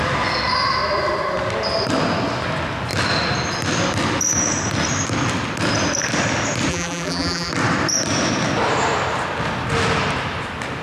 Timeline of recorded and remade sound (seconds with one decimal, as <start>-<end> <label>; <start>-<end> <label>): 0.0-6.7 recorded; 6.7-7.5 remade; 7.5-10.8 recorded